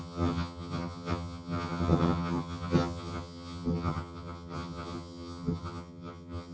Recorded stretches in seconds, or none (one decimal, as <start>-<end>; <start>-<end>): none